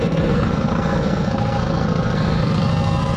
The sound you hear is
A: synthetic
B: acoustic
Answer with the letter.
A